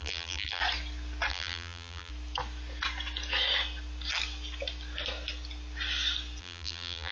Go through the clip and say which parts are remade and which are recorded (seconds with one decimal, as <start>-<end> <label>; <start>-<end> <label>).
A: 0.0-0.6 remade; 0.6-1.3 recorded; 1.3-2.1 remade; 2.1-6.4 recorded; 6.4-7.1 remade